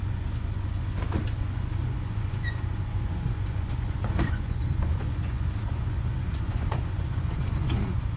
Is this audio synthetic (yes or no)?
yes